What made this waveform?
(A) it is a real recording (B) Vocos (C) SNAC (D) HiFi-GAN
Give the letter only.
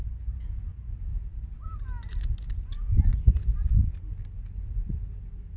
A